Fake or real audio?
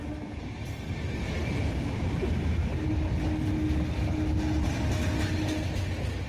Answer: real